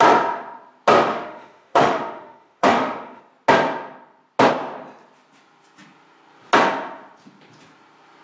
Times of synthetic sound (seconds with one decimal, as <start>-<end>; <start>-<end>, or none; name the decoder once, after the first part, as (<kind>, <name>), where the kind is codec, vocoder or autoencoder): 1.1-3.2 (autoencoder, DAC-VAE)